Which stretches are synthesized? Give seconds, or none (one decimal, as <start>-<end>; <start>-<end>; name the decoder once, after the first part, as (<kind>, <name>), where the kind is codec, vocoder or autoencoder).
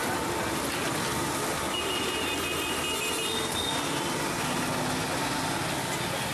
none